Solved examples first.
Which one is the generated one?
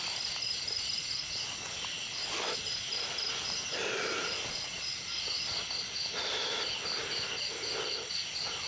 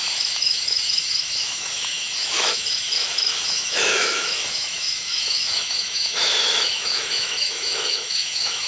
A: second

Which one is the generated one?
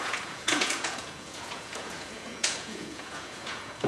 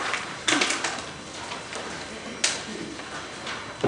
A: first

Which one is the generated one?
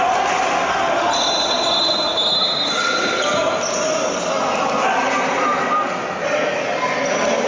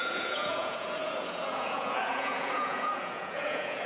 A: second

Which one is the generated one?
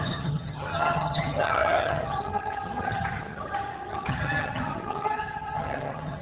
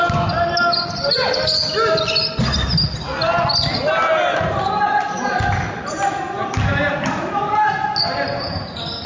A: first